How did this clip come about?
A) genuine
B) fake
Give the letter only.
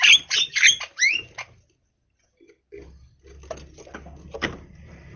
A